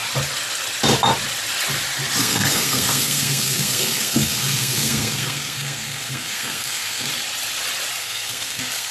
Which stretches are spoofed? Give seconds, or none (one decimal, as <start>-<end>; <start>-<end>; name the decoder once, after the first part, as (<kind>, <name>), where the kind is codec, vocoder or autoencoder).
2.2-7.1 (codec, SNAC); 8.0-8.9